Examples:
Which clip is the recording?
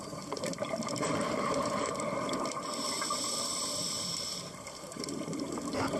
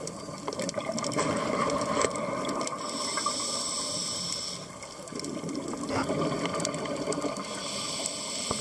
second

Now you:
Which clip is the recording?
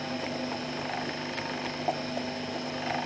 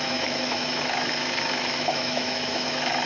first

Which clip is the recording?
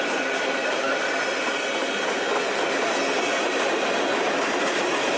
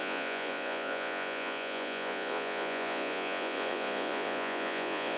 first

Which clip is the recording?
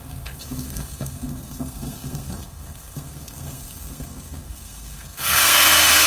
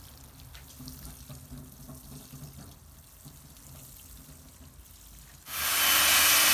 second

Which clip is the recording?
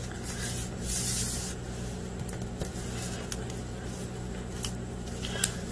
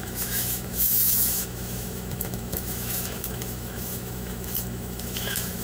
first